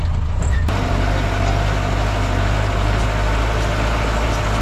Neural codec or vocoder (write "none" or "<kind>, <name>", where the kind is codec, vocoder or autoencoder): none